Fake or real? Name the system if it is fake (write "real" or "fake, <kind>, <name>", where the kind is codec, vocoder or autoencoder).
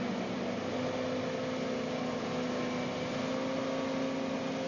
real